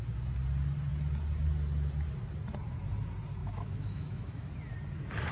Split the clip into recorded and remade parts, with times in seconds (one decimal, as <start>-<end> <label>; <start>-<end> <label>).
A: 0.0-3.4 recorded; 3.4-4.5 remade; 4.5-5.3 recorded